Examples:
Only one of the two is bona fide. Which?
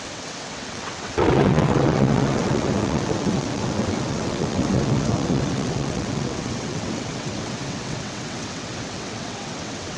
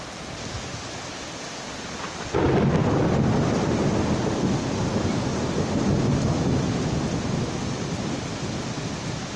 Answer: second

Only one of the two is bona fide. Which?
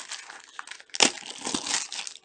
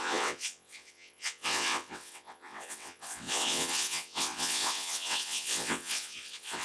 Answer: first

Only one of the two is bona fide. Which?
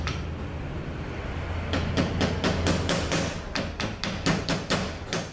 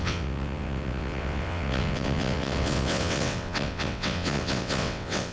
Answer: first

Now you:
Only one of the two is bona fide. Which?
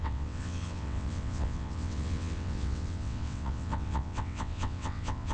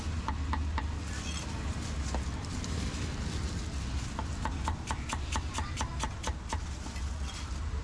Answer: second